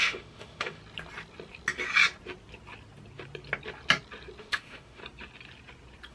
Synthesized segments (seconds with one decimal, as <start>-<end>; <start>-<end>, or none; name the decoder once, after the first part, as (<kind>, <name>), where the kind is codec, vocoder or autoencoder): 0.0-0.8 (autoencoder, DAC-VAE); 4.4-5.0